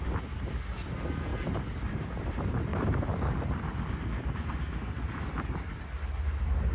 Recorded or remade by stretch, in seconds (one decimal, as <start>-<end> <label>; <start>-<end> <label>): 0.0-1.3 recorded; 1.3-2.1 remade; 2.1-2.7 recorded; 2.7-5.8 remade; 5.8-6.7 recorded